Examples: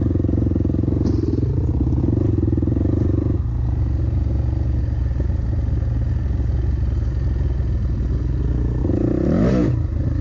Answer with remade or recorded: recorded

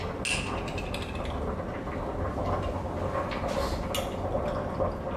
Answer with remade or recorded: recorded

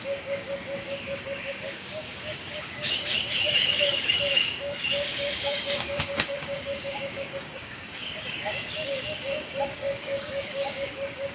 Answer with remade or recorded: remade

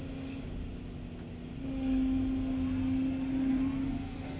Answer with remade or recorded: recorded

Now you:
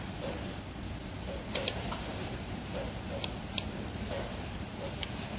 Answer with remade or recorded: remade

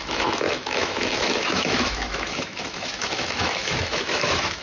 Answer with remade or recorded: remade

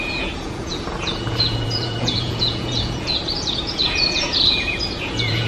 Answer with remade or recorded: remade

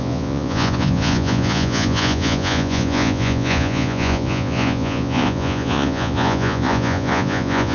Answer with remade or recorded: remade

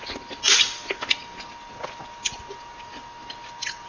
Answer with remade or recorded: recorded